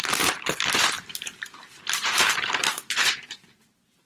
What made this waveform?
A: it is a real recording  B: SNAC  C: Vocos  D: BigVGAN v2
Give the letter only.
D